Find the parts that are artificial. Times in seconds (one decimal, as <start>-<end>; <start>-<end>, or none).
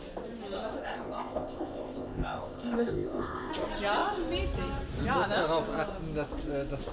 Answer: 0.8-3.5